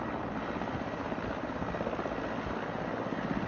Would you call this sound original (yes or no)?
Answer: yes